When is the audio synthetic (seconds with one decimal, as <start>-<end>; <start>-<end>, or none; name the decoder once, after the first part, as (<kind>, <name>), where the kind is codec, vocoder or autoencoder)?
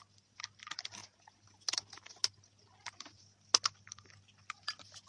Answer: none